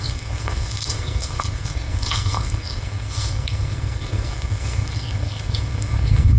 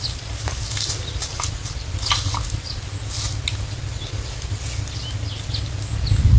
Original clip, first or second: second